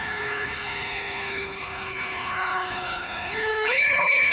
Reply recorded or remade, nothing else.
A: remade